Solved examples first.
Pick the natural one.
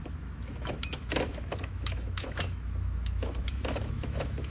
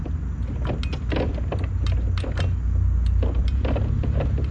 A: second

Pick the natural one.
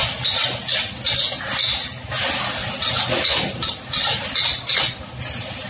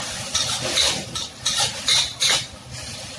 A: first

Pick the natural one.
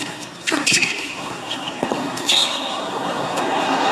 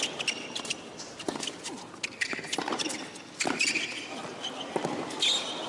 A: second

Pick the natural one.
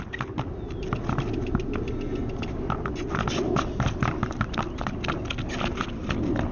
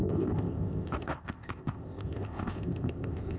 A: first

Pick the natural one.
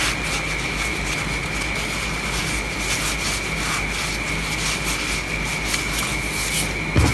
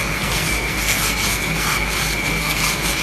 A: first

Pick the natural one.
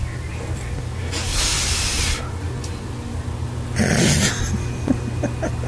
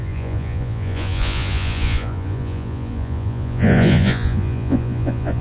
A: first